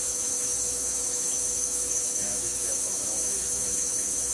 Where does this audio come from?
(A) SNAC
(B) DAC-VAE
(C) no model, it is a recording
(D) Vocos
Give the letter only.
B